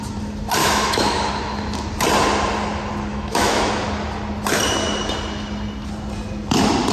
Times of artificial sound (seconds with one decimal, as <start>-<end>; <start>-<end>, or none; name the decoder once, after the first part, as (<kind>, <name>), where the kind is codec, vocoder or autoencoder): 0.6-1.3 (autoencoder, DAC-VAE); 3.1-3.7